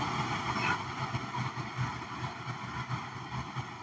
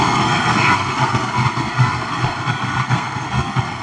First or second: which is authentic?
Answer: first